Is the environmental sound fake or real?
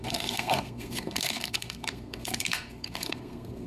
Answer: fake